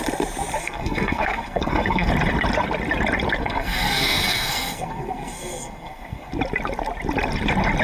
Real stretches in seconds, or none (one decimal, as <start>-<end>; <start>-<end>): 0.0-0.6; 2.1-3.4; 6.3-7.8